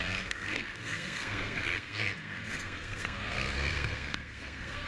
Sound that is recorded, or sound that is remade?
remade